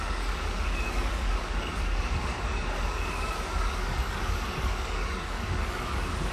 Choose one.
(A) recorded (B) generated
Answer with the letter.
B